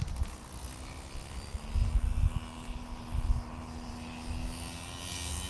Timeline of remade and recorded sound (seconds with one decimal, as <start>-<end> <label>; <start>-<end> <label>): 0.0-5.5 recorded